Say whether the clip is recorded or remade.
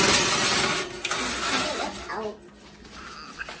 recorded